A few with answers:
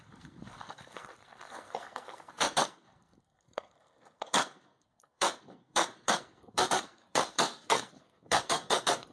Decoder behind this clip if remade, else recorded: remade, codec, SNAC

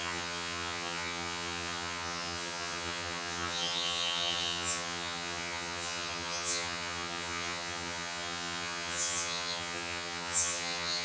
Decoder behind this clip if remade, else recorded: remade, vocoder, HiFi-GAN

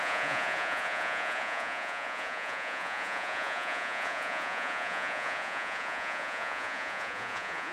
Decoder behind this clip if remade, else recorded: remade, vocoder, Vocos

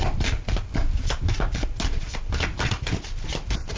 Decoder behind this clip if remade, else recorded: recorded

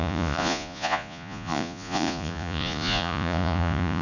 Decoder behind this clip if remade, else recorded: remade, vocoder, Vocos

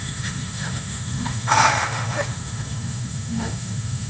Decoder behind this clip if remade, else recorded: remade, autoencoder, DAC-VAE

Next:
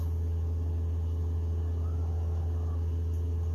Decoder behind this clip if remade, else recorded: recorded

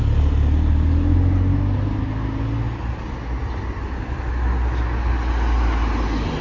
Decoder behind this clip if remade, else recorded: recorded